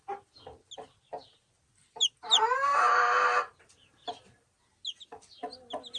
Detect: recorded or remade recorded